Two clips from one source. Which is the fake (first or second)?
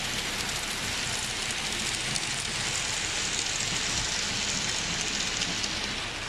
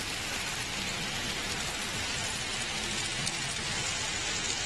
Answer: second